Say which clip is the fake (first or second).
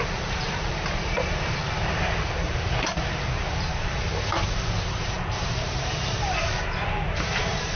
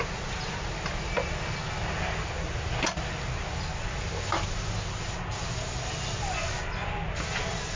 first